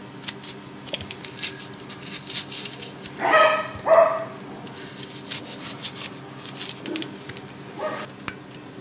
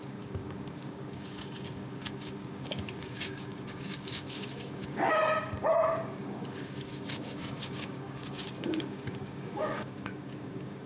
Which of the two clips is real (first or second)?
first